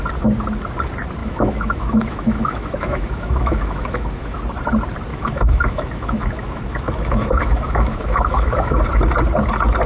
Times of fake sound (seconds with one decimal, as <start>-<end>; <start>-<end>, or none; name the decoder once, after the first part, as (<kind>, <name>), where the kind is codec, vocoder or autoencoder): 1.2-4.4 (autoencoder, DAC-VAE); 5.1-8.8

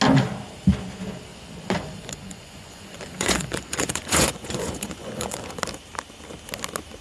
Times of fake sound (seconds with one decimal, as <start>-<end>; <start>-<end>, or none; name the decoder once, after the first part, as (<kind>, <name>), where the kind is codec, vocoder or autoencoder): 1.3-5.5 (vocoder, Vocos)